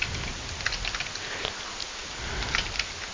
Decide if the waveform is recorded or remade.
recorded